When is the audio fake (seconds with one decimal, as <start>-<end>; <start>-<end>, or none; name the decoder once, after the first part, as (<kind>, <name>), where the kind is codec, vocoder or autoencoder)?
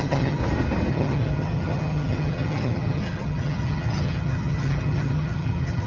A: 0.0-0.4 (vocoder, HiFi-GAN); 0.9-5.9